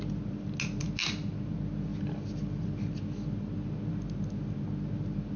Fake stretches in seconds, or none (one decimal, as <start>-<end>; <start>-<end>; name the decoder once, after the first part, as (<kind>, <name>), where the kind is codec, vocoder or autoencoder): none